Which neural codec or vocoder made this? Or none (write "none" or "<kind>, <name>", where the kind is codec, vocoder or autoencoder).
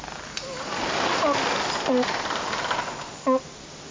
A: none